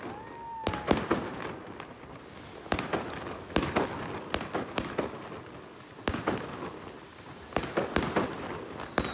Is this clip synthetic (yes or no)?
no